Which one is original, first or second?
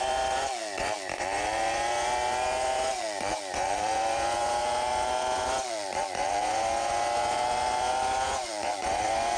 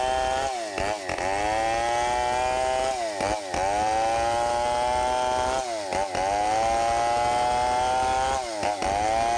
second